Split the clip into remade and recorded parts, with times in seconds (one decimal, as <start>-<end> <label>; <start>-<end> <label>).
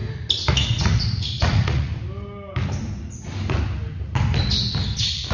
0.0-0.5 recorded; 0.5-1.9 remade; 1.9-5.3 recorded